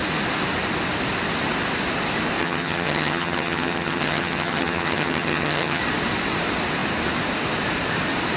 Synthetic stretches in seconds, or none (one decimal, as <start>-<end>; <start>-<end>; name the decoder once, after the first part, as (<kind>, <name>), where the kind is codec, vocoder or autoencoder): 2.4-5.8 (vocoder, HiFi-GAN)